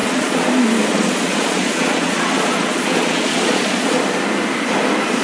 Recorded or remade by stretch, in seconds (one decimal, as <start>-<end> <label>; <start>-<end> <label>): 0.0-0.5 remade; 0.5-0.9 recorded; 0.9-4.0 remade; 4.0-5.2 recorded